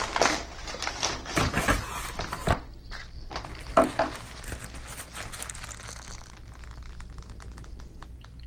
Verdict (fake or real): real